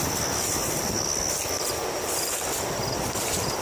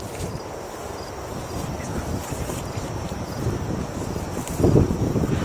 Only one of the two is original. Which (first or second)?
first